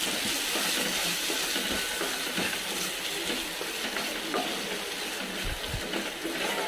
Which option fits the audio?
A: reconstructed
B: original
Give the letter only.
B